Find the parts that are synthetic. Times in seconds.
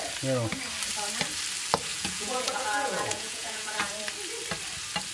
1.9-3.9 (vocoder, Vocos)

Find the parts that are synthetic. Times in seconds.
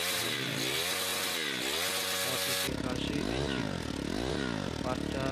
none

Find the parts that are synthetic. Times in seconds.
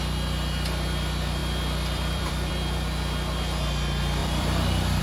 1.4-2.5 (vocoder, BigVGAN v2); 4.2-5.0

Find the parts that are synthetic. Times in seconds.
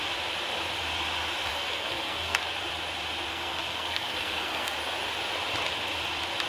1.5-2.4 (codec, SNAC); 3.3-4.7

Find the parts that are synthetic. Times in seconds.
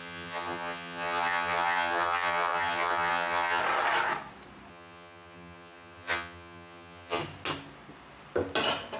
0.0-3.6 (vocoder, HiFi-GAN); 4.7-7.2